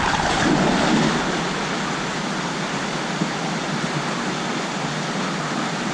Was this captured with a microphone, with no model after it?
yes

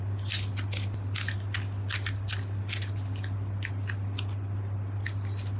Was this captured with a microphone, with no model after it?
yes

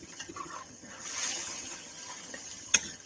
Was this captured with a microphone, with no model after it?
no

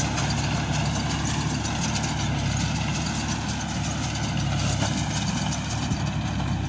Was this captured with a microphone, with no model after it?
yes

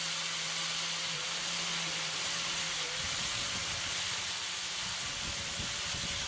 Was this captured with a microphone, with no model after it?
yes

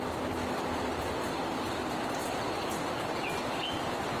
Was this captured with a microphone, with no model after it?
yes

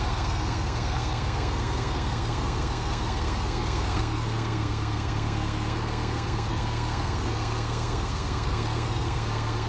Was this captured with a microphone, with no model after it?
no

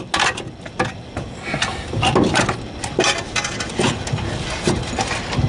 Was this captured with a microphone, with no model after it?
yes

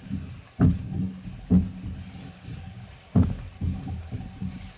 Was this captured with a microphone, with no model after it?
yes